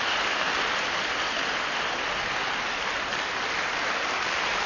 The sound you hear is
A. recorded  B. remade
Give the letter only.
A